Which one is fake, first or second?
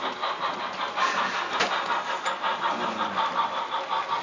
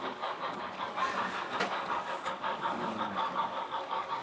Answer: second